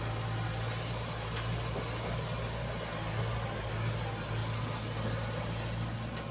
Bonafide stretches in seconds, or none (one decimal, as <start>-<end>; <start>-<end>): 0.0-6.3